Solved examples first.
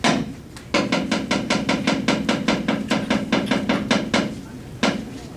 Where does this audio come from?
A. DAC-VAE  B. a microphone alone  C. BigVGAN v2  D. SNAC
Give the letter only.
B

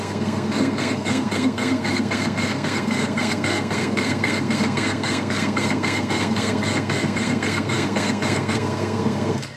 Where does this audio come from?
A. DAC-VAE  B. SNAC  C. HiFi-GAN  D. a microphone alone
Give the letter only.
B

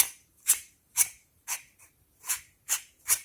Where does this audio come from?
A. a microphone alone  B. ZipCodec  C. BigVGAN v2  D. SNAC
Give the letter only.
C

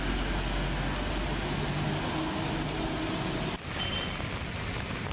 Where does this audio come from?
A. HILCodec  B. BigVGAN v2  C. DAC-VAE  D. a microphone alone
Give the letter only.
D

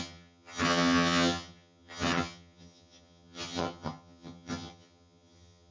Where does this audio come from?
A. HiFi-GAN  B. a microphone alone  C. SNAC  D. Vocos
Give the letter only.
A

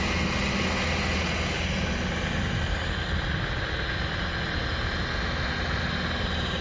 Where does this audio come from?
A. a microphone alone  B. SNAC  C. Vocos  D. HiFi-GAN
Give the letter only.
A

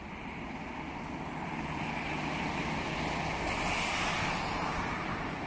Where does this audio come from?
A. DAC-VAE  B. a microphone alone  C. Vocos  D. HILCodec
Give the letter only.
B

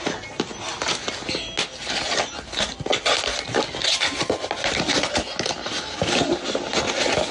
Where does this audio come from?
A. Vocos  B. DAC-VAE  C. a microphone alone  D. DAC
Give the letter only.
C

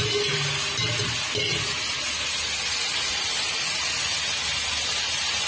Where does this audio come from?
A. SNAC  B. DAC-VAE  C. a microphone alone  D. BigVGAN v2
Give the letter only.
C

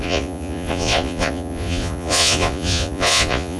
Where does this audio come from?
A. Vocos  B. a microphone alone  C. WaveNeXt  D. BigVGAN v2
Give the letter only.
A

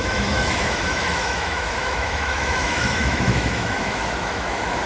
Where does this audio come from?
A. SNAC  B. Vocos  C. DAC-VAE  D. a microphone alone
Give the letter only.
C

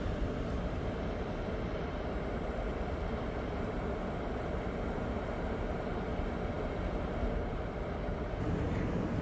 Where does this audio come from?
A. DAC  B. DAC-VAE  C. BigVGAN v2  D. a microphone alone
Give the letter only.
D